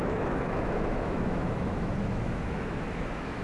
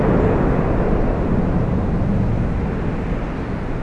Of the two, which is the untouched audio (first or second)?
second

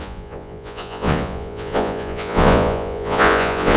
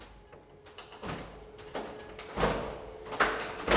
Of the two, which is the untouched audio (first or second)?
second